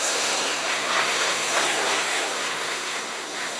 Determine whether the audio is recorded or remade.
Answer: remade